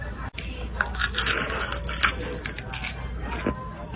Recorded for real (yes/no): yes